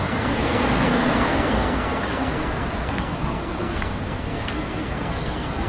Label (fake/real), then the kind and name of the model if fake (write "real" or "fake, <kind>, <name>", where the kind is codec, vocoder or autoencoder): fake, codec, SNAC